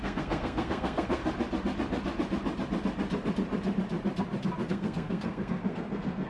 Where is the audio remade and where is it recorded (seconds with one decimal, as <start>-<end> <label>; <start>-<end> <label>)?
0.0-1.2 remade; 1.2-4.7 recorded; 4.7-6.3 remade